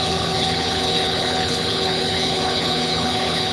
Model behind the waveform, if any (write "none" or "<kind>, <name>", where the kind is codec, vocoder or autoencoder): codec, HILCodec